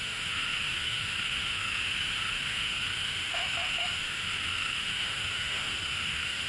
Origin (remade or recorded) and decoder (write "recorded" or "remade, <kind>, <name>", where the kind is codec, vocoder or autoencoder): remade, autoencoder, DAC-VAE